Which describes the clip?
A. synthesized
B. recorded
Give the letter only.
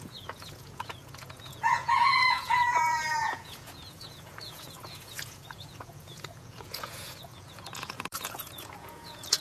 A